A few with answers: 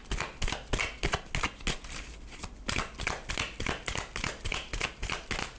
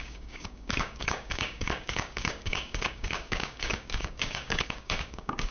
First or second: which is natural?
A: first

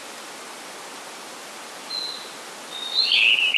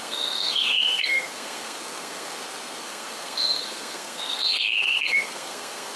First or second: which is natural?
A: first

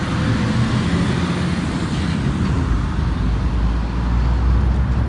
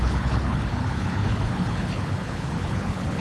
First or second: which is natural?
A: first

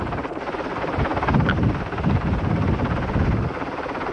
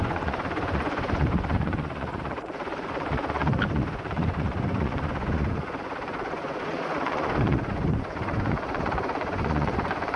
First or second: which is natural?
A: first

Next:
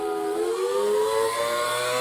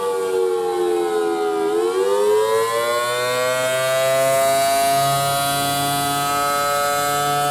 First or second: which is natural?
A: second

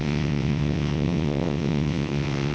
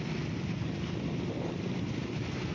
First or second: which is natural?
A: second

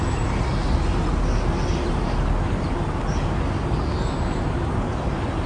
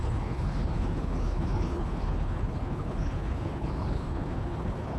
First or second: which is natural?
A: first